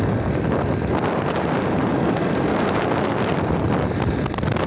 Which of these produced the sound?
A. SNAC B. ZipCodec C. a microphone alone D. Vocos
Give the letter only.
C